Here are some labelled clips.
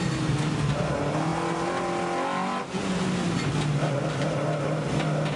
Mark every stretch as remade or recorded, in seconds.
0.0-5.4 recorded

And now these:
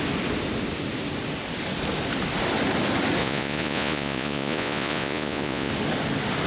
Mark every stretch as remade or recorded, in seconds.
0.0-3.2 recorded; 3.2-5.7 remade; 5.7-6.5 recorded

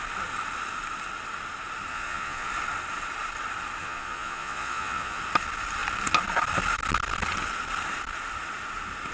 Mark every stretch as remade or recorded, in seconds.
0.0-1.9 recorded; 1.9-2.5 remade; 2.5-3.8 recorded; 3.8-5.2 remade; 5.2-9.1 recorded

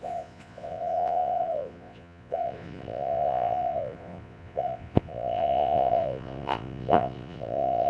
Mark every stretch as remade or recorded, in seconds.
0.0-7.9 remade